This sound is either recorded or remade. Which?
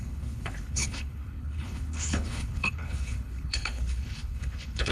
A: remade